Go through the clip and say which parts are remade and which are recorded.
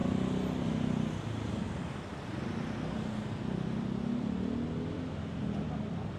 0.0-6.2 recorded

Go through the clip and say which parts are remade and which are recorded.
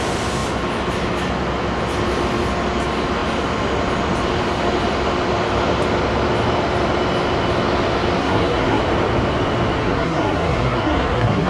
0.0-8.2 recorded; 8.2-8.8 remade; 8.8-9.8 recorded; 9.8-11.5 remade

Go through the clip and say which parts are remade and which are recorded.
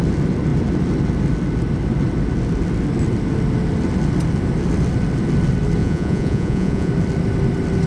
0.0-5.8 recorded; 5.8-6.9 remade; 6.9-7.9 recorded